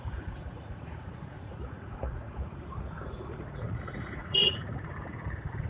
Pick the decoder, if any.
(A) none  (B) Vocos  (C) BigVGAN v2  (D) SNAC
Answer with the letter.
B